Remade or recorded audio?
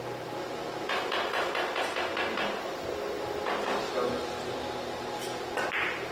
recorded